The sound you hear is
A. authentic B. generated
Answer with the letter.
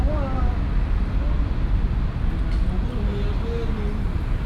A